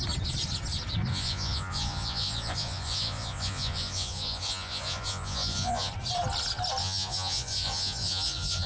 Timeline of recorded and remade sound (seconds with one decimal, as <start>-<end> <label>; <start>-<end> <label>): 0.0-1.1 recorded; 1.1-5.9 remade; 5.9-6.8 recorded; 6.8-8.7 remade